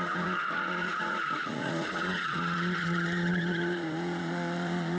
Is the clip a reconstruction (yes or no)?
yes